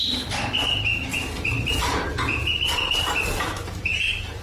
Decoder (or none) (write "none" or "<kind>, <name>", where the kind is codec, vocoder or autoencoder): vocoder, BigVGAN v2